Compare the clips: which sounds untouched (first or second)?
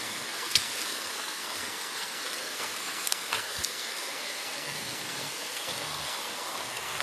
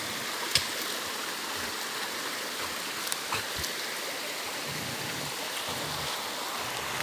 second